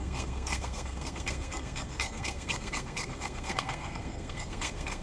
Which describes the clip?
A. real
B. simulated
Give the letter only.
B